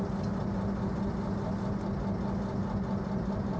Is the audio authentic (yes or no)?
yes